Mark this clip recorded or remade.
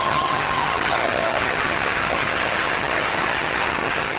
remade